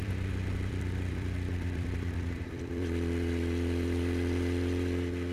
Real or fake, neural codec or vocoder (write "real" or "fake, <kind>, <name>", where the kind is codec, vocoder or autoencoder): fake, vocoder, BigVGAN v2